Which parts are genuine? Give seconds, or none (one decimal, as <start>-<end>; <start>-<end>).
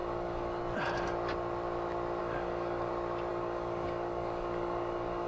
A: 0.6-2.2; 2.9-3.3